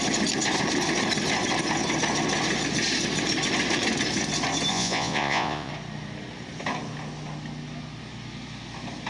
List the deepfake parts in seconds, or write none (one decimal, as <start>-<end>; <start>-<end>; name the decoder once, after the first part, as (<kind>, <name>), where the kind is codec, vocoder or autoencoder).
4.7-5.7 (vocoder, Vocos)

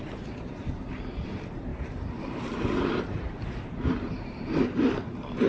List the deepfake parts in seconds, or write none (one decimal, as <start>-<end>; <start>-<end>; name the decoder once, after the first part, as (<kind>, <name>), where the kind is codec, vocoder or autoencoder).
0.0-5.5 (vocoder, BigVGAN v2)